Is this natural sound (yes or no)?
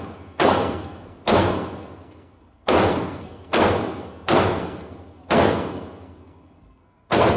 no